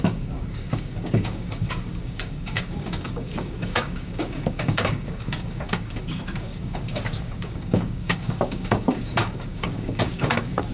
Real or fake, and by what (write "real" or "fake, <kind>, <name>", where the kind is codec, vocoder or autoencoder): fake, codec, DAC